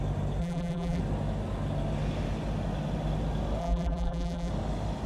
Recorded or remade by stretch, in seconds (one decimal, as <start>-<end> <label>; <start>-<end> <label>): 0.0-0.4 recorded; 0.4-1.0 remade; 1.0-3.6 recorded; 3.6-4.5 remade; 4.5-5.1 recorded